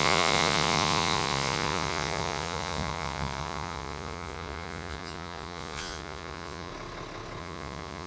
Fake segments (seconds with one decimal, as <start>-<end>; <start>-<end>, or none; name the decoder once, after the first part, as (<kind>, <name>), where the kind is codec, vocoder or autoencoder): 0.0-6.7 (vocoder, Vocos); 7.4-8.1